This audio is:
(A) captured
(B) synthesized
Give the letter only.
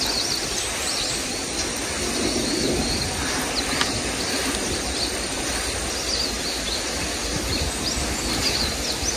A